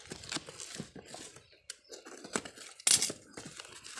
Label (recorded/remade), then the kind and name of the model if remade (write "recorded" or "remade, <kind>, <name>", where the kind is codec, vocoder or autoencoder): recorded